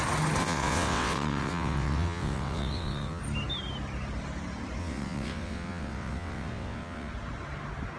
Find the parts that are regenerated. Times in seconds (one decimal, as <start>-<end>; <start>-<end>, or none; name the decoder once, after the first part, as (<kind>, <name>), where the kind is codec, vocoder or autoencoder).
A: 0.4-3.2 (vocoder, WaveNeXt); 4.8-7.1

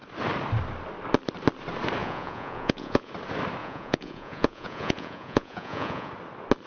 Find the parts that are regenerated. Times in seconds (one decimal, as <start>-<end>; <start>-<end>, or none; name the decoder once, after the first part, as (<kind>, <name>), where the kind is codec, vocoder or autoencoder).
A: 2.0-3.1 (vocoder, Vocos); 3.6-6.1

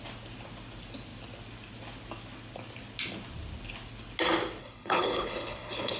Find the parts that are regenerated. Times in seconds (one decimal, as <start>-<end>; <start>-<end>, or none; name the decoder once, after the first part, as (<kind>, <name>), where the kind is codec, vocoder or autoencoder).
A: 4.6-6.0 (codec, HILCodec)

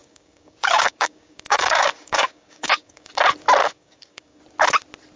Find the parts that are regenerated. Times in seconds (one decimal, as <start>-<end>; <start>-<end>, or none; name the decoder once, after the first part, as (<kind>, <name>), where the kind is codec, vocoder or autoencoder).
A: 0.0-3.1 (codec, DAC); 3.6-4.4